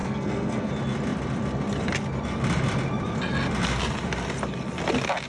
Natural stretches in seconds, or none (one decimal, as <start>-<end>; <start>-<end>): 0.7-5.3